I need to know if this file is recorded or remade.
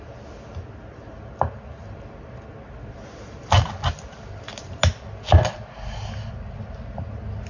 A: recorded